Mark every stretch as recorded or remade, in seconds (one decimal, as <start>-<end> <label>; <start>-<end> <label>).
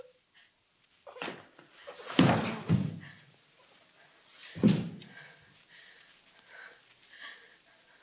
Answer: 0.0-8.0 recorded